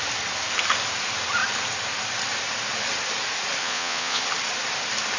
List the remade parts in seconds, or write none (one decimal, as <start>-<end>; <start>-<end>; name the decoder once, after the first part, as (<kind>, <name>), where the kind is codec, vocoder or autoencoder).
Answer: 3.6-4.2 (vocoder, Vocos)

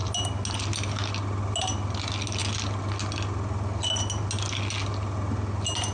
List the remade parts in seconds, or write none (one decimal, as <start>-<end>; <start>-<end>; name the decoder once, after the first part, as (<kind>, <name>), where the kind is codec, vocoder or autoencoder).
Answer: none